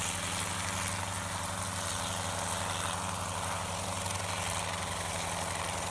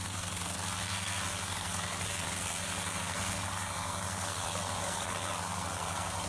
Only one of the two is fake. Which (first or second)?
second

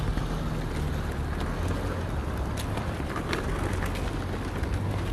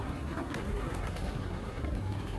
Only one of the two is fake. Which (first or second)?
second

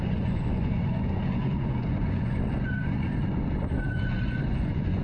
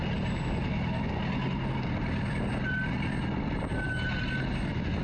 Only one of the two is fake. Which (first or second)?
first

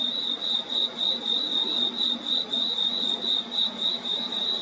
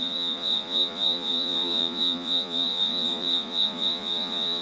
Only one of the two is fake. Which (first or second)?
second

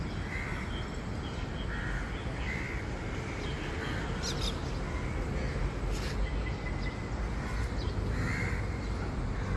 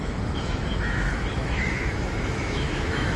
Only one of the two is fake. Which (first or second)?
second